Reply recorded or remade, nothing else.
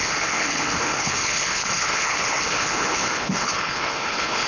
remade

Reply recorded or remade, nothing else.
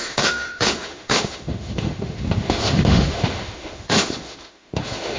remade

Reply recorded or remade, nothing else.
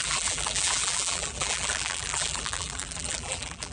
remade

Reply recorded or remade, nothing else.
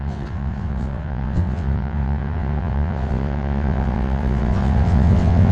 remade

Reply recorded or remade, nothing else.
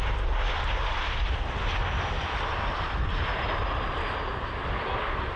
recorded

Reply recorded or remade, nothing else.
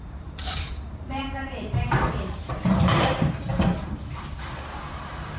remade